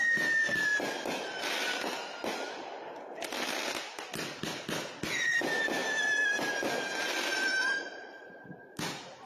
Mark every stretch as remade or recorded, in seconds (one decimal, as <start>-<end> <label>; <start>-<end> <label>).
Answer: 0.0-5.8 recorded; 5.8-6.5 remade; 6.5-7.3 recorded; 7.3-8.6 remade; 8.6-9.3 recorded